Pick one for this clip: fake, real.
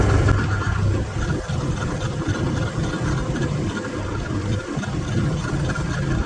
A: fake